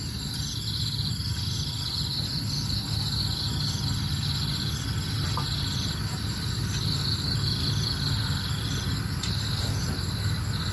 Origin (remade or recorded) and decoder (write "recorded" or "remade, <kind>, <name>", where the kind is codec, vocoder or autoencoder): recorded